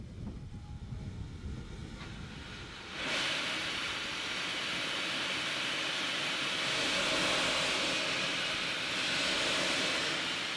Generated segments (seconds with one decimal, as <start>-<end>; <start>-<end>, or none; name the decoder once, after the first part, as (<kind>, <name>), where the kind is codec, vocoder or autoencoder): none